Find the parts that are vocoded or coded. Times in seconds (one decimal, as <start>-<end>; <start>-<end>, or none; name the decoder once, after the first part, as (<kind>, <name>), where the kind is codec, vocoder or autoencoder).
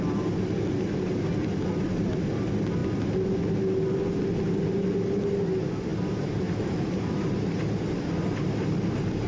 none